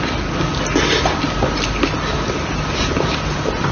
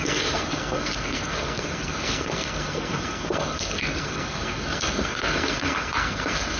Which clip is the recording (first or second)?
first